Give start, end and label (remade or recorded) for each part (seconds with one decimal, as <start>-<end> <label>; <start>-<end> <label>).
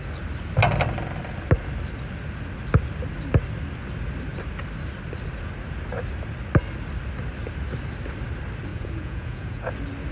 0.0-8.7 recorded; 8.7-9.7 remade; 9.7-10.1 recorded